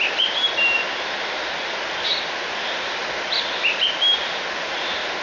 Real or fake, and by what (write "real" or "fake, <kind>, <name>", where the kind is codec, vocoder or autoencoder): real